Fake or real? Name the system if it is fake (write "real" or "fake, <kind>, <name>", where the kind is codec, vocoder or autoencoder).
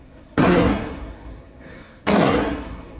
fake, codec, SNAC